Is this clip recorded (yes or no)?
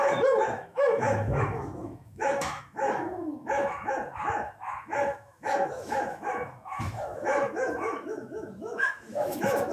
no